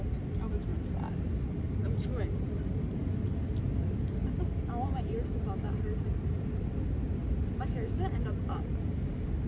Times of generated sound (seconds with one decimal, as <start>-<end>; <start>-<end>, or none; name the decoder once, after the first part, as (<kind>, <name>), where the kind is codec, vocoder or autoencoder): none